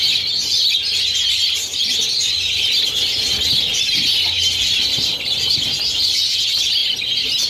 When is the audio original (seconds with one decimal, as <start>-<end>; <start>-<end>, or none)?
0.0-7.5

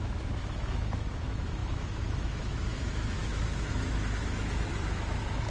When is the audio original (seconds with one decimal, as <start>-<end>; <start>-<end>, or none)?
none

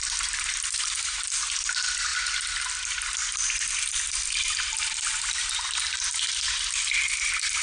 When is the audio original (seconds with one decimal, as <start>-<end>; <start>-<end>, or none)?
0.0-7.6

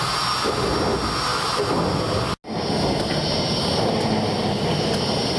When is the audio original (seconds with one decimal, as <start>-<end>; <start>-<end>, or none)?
0.0-5.4

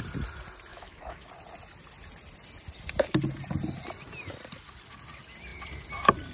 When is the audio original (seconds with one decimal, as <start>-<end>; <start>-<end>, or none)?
0.0-0.7; 1.3-6.3

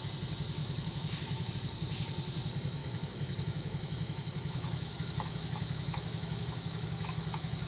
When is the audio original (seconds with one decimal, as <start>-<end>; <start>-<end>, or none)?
0.0-0.6; 1.5-2.8